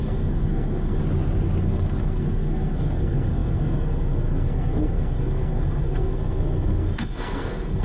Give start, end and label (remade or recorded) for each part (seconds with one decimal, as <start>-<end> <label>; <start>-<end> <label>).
0.0-1.0 remade; 1.0-1.6 recorded; 1.6-7.8 remade